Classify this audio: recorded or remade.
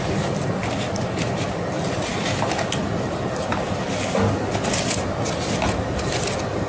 recorded